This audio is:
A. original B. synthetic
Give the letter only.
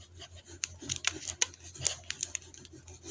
A